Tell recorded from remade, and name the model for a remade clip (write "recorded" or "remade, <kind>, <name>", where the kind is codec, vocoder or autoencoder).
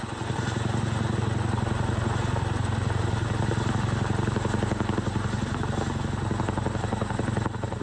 recorded